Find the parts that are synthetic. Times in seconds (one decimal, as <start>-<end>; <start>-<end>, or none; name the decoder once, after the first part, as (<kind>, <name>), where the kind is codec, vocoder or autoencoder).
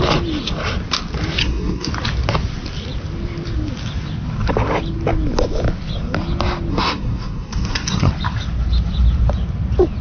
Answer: 1.4-1.9 (codec, SNAC); 6.7-8.1